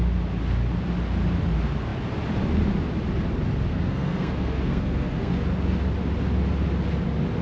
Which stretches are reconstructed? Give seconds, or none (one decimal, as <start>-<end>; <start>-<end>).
3.7-5.3